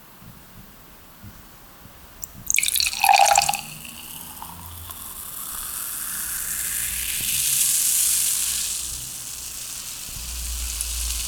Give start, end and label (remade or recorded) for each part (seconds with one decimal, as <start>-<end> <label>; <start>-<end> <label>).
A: 0.0-11.3 recorded